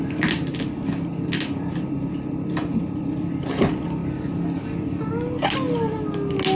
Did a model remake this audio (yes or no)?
no